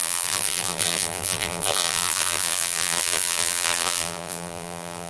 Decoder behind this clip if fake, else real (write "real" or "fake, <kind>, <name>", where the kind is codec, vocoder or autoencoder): fake, vocoder, BigVGAN v2